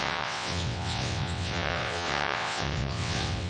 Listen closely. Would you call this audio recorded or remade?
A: remade